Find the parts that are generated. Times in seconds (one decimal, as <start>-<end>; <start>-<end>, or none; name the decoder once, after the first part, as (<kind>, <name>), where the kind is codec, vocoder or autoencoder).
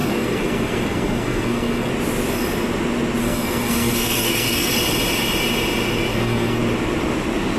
0.0-1.9 (codec, SNAC); 3.2-4.7; 6.1-6.6